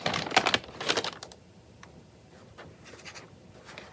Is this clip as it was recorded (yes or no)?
yes